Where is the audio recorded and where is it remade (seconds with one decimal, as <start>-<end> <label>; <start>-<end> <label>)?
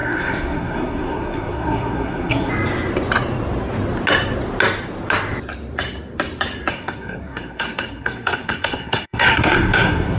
0.0-2.5 remade; 2.5-6.7 recorded; 6.7-10.2 remade